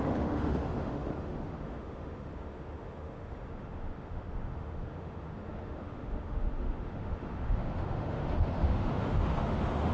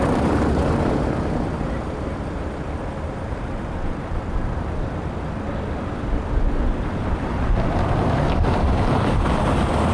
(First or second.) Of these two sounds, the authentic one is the second